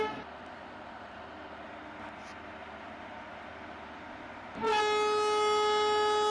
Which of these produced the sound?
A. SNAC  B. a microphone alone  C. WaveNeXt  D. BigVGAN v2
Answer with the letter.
B